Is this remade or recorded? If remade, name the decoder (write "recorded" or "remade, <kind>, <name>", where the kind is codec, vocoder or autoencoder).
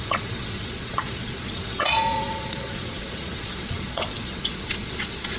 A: remade, vocoder, Vocos